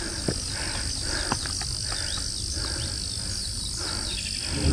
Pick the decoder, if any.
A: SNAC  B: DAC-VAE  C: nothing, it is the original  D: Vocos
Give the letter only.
C